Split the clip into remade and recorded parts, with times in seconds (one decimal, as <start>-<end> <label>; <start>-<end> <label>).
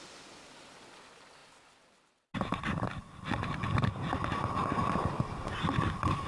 0.0-6.3 recorded